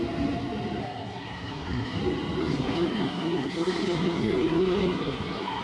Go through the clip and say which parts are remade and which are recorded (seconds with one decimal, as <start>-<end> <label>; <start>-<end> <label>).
0.0-0.8 recorded; 0.8-2.0 remade; 2.0-2.4 recorded; 2.4-5.6 remade